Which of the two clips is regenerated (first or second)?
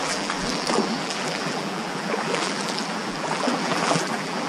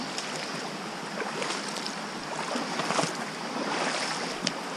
first